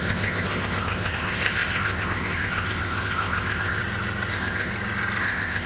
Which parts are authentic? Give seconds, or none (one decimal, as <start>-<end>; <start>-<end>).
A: 3.8-4.3; 4.7-5.2